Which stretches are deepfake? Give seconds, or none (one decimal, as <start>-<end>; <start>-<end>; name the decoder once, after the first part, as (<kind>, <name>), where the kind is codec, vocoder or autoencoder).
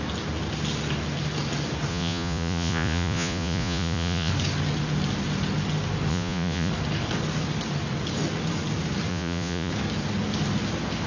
1.9-4.3 (vocoder, Vocos); 6.1-6.7; 9.1-9.7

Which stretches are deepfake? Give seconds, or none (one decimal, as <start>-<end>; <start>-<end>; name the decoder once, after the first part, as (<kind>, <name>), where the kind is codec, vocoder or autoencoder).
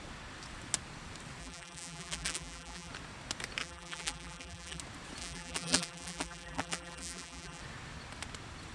1.4-2.9 (vocoder, BigVGAN v2); 3.6-4.8; 5.2-7.6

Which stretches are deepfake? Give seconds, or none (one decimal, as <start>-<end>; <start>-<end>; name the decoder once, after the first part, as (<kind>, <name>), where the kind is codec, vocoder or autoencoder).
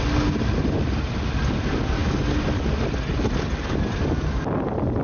none